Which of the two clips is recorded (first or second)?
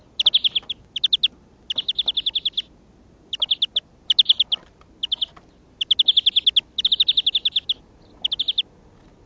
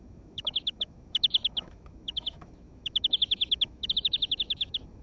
first